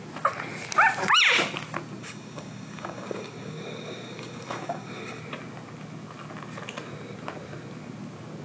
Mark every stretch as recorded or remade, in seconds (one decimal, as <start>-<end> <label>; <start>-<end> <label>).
0.0-2.0 recorded; 2.0-5.2 remade; 5.2-8.4 recorded